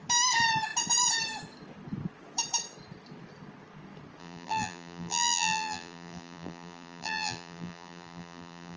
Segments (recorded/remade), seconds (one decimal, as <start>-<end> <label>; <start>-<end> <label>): 0.0-4.2 recorded; 4.2-8.8 remade

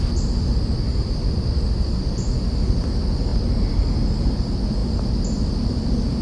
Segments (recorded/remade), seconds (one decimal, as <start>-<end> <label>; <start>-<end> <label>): 0.0-6.2 recorded

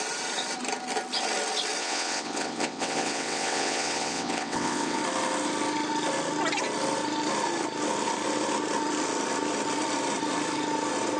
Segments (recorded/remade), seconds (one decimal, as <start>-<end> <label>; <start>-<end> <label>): 0.0-1.8 recorded; 1.8-5.0 remade; 5.0-11.2 recorded

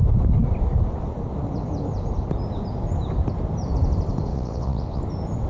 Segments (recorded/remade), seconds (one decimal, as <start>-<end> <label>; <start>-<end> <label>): 0.0-4.3 recorded; 4.3-5.0 remade; 5.0-5.5 recorded

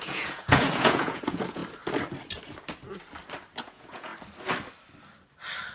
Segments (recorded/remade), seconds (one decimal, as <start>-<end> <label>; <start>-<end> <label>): 0.0-1.6 remade; 1.6-3.6 recorded; 3.6-4.1 remade; 4.1-5.7 recorded

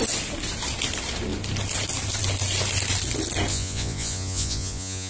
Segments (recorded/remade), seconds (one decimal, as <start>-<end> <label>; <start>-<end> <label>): 0.0-3.5 recorded; 3.5-5.1 remade